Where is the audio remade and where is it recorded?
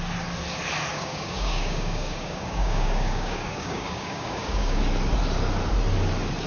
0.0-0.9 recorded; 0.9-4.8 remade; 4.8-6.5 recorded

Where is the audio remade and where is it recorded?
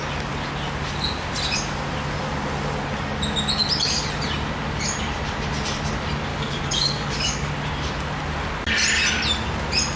0.0-6.3 recorded; 6.3-7.5 remade; 7.5-10.0 recorded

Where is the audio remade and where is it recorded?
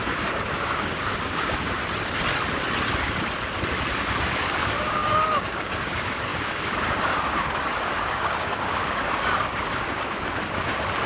0.0-1.8 remade; 1.8-4.0 recorded; 4.0-11.1 remade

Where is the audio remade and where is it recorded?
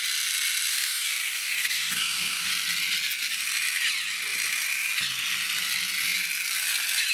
0.0-0.7 recorded; 0.7-2.5 remade; 2.5-7.1 recorded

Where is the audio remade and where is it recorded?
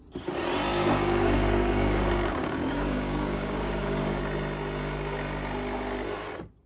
0.0-0.7 recorded; 0.7-4.2 remade; 4.2-6.7 recorded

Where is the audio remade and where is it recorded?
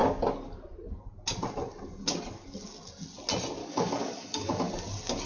0.0-3.6 recorded; 3.6-4.7 remade; 4.7-5.3 recorded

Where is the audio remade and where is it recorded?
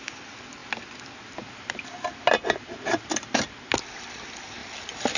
0.0-5.2 recorded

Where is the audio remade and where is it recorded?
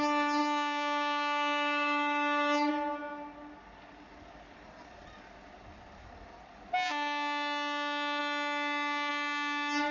0.0-0.4 recorded; 0.4-2.7 remade; 2.7-9.9 recorded